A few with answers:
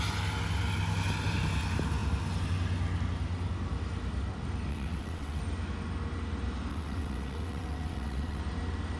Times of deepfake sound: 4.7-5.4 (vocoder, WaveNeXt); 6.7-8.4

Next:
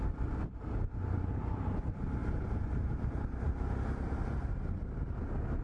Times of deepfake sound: 2.2-4.5 (vocoder, BigVGAN v2)

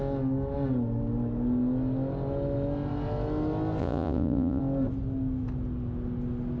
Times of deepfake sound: 3.8-4.6 (vocoder, Vocos)

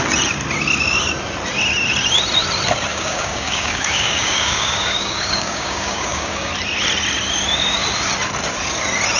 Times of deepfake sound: 2.9-6.5 (codec, DAC)

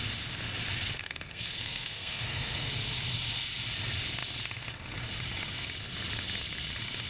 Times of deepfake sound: 1.0-2.7 (codec, SNAC)